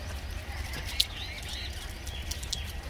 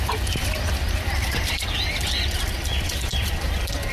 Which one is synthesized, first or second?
second